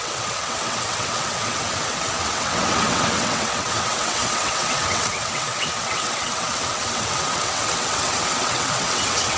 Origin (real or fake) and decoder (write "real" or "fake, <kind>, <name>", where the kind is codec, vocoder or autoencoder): fake, vocoder, WaveNeXt